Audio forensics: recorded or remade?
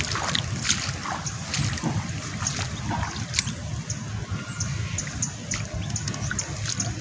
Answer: recorded